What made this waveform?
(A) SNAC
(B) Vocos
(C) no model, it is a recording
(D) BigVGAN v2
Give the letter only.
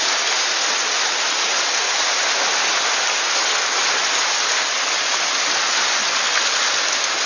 C